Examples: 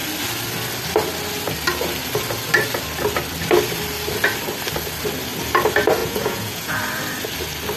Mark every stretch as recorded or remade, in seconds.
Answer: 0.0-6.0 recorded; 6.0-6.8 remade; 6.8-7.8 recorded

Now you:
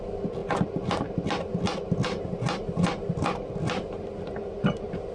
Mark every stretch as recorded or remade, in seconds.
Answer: 0.0-5.1 recorded

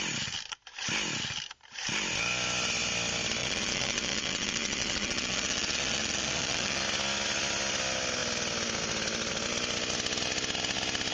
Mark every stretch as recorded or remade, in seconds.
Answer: 0.0-3.4 recorded; 3.4-6.8 remade; 6.8-11.1 recorded

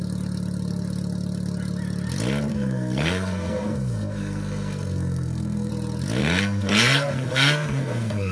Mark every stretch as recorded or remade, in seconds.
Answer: 0.0-2.5 recorded; 2.5-5.7 remade; 5.7-6.2 recorded; 6.2-8.3 remade

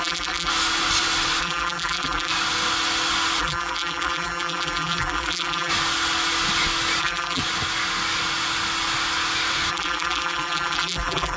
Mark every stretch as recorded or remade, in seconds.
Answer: 0.0-0.5 remade; 0.5-1.4 recorded; 1.4-2.3 remade; 2.3-3.4 recorded; 3.4-5.7 remade; 5.7-7.0 recorded; 7.0-7.4 remade; 7.4-9.7 recorded; 9.7-11.4 remade